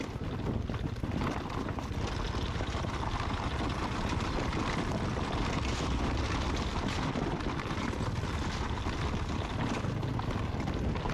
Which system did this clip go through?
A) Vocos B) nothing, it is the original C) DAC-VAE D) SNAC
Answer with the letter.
B